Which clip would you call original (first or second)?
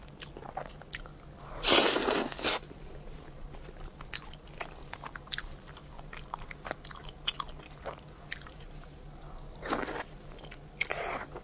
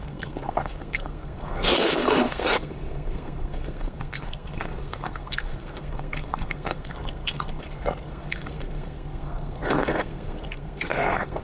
first